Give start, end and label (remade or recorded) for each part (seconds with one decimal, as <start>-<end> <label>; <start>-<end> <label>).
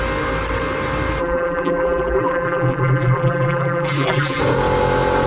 0.0-1.2 recorded; 1.2-4.4 remade; 4.4-5.3 recorded